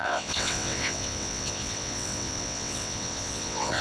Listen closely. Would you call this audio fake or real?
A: fake